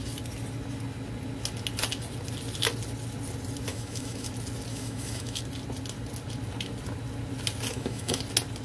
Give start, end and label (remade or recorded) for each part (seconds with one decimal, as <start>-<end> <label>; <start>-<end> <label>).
0.0-3.7 recorded; 3.7-4.3 remade; 4.3-4.7 recorded; 4.7-5.4 remade; 5.4-7.7 recorded; 7.7-8.2 remade; 8.2-8.6 recorded